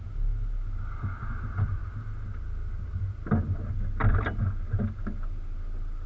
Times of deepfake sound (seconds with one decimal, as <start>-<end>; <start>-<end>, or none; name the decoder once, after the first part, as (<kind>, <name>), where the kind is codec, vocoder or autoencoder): none